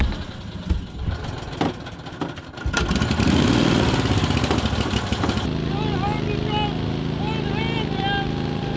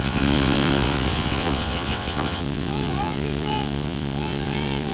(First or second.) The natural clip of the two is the first